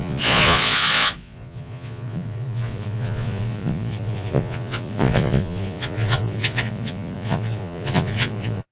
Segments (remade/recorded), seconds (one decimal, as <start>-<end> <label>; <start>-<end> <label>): 0.0-8.7 remade